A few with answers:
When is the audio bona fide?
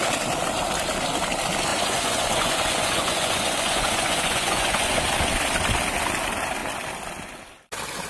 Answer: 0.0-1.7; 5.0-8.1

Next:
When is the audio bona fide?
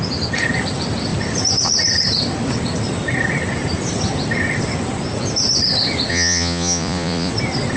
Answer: 0.0-6.1; 7.3-7.8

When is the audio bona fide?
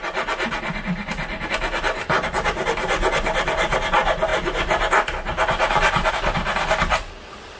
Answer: 0.0-7.6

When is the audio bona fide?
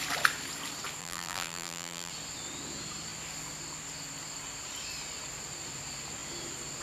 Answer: 0.0-1.0; 2.1-6.8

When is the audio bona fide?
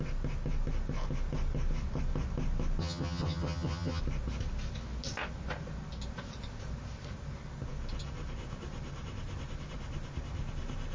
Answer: 0.0-2.8; 4.0-10.9